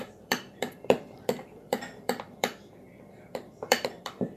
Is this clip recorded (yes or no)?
no